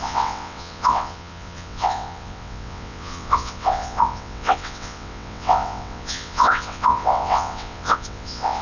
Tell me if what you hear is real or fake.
fake